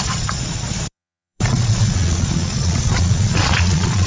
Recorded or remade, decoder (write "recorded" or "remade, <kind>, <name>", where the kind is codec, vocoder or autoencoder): remade, vocoder, Vocos